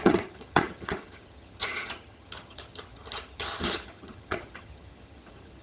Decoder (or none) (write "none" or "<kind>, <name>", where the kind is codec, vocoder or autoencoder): vocoder, HiFi-GAN